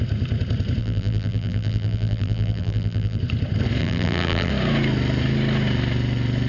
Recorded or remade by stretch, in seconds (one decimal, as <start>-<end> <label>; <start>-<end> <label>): 0.0-0.8 recorded; 0.8-3.2 remade; 3.2-3.8 recorded; 3.8-4.5 remade; 4.5-6.5 recorded